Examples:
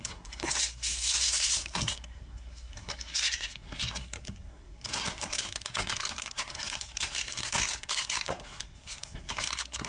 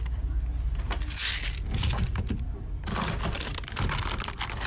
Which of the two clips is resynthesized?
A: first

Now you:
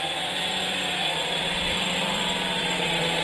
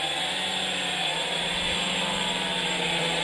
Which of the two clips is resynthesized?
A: first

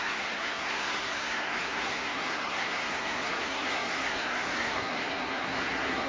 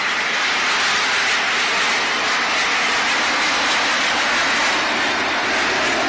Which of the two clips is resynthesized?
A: first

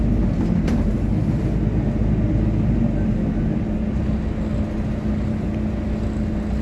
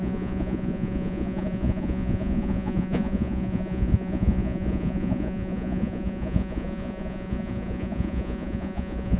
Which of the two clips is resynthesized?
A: second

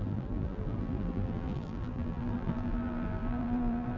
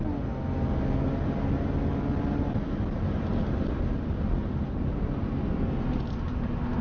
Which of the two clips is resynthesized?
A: first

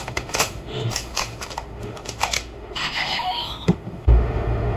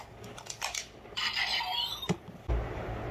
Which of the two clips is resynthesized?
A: first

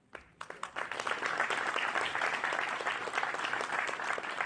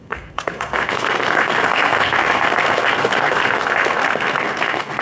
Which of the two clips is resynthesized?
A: second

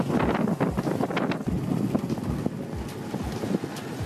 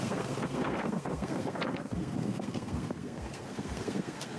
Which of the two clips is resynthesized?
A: second